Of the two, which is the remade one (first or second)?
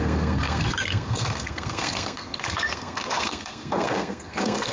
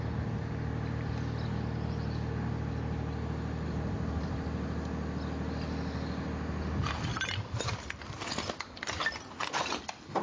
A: first